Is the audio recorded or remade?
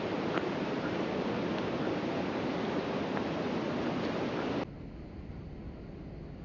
recorded